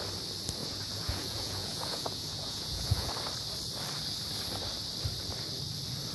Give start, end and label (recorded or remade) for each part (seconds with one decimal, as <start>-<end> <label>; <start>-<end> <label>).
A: 0.0-0.6 recorded; 0.6-3.1 remade; 3.1-6.1 recorded